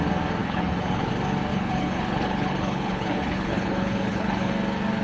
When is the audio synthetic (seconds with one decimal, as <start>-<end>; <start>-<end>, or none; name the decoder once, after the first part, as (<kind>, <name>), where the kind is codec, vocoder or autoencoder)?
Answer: 0.4-1.1 (codec, HILCodec); 1.5-4.5